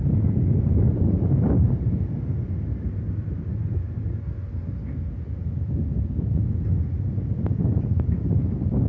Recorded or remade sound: recorded